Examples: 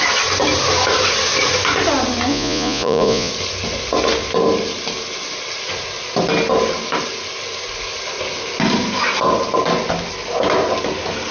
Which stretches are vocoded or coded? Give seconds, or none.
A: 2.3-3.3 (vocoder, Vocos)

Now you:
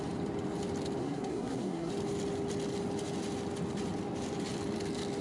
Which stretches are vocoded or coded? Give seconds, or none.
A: 1.0-1.9 (codec, SNAC)

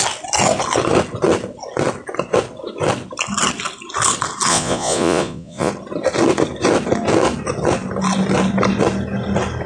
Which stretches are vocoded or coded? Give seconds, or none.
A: 4.5-5.7 (vocoder, Vocos)

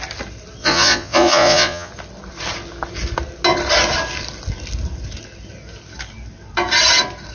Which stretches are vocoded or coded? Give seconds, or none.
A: 0.6-1.9 (vocoder, Vocos)

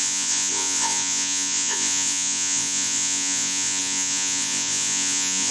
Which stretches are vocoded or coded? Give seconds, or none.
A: 0.0-5.5 (vocoder, Vocos)

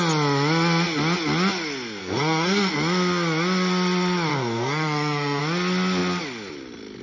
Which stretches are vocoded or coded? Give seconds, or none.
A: 2.0-2.7 (codec, SNAC); 4.3-5.4

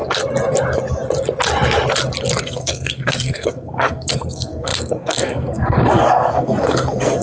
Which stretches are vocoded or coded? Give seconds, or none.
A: 2.4-7.2 (codec, SNAC)